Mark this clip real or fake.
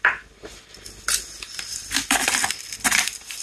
real